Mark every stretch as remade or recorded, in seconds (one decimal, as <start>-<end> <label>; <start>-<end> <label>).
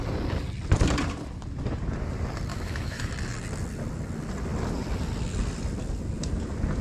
0.0-2.5 recorded; 2.5-3.1 remade; 3.1-6.8 recorded